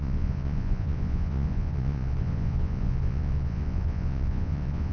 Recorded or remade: remade